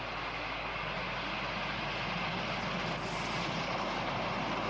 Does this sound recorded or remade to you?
recorded